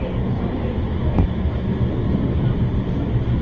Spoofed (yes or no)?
no